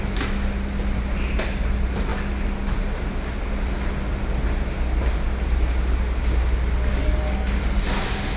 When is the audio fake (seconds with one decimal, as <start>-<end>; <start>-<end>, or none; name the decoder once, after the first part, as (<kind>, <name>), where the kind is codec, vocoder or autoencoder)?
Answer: 6.9-7.6 (codec, DAC)